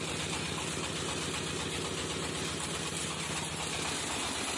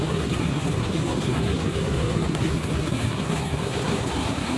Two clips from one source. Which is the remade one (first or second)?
second